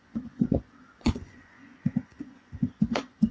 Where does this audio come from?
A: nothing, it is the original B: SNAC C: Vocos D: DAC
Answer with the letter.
C